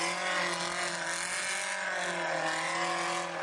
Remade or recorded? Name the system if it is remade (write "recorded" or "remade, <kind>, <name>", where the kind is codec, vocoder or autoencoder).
recorded